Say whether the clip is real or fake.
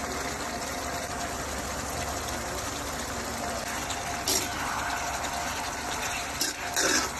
real